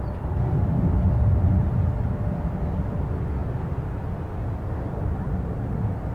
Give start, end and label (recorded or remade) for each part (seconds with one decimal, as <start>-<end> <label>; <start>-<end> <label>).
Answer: 0.0-6.1 recorded

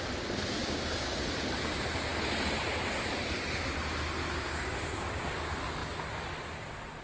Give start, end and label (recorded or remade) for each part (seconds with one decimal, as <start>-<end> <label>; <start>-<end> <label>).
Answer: 0.0-0.6 recorded; 0.6-1.1 remade; 1.1-4.2 recorded; 4.2-5.1 remade; 5.1-7.0 recorded

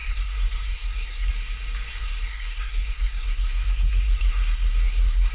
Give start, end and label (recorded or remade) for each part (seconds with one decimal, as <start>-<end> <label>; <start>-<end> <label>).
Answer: 0.0-1.3 remade; 1.3-1.9 recorded; 1.9-5.3 remade

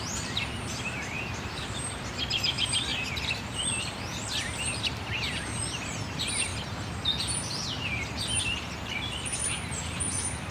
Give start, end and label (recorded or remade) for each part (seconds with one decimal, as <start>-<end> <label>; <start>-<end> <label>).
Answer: 0.0-6.5 remade; 6.5-8.4 recorded; 8.4-10.5 remade

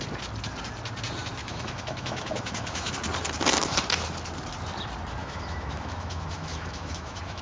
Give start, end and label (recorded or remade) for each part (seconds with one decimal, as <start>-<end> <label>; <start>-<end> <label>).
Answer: 0.0-1.4 recorded; 1.4-2.9 remade; 2.9-5.2 recorded; 5.2-7.4 remade

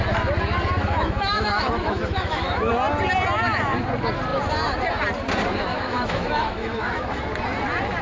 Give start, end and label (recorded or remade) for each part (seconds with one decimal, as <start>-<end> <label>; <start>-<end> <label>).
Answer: 0.0-0.8 recorded; 0.8-2.7 remade; 2.7-5.7 recorded; 5.7-7.2 remade; 7.2-8.0 recorded

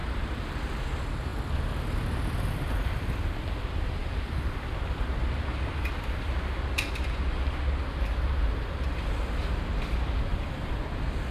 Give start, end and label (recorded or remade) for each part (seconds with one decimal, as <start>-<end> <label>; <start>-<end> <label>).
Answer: 0.0-0.9 remade; 0.9-4.0 recorded; 4.0-5.8 remade; 5.8-10.3 recorded; 10.3-10.8 remade; 10.8-11.3 recorded